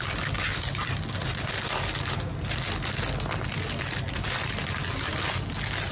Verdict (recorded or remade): recorded